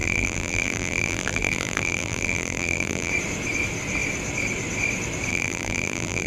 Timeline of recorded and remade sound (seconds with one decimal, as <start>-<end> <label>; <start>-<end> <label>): 0.0-3.1 remade; 3.1-5.3 recorded; 5.3-6.3 remade